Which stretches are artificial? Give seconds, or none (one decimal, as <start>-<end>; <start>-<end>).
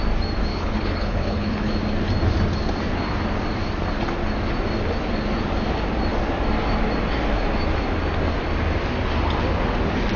0.5-1.7